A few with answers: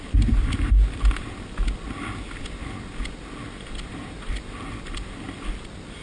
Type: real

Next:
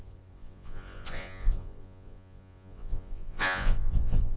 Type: fake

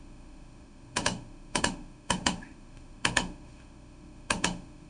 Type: fake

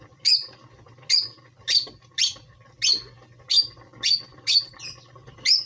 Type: real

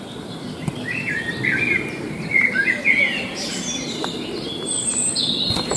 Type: fake